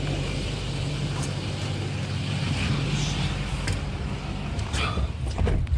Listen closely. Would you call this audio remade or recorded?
recorded